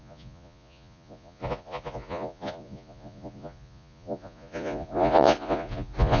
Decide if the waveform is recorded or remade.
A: remade